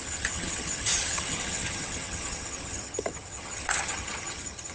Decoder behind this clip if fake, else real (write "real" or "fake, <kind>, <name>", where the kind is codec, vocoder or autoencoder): fake, vocoder, HiFi-GAN